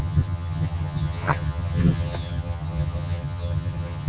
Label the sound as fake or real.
fake